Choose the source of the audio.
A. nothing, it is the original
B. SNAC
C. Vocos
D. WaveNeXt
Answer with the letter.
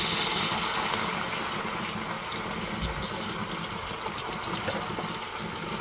A